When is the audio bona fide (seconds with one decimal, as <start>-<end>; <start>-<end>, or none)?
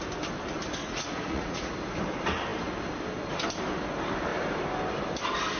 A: 0.0-0.8; 1.7-5.6